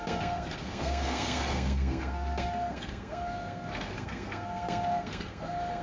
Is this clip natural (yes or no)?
no